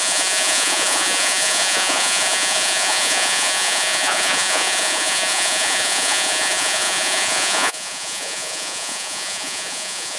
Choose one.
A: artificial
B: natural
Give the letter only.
A